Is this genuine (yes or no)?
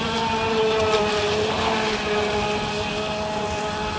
yes